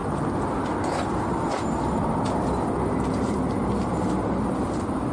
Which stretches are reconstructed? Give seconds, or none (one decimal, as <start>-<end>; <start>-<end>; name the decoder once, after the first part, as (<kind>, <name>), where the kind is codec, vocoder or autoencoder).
none